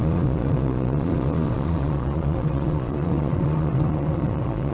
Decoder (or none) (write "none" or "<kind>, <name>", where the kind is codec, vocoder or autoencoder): vocoder, Vocos